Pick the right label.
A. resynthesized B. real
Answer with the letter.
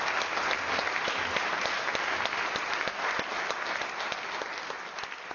B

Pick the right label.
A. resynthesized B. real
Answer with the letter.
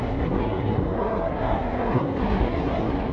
A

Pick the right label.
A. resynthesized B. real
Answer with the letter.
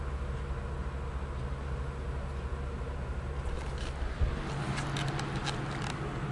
B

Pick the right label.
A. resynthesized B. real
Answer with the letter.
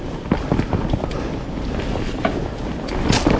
B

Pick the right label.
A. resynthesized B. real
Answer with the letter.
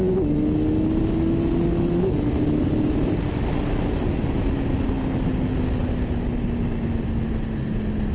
B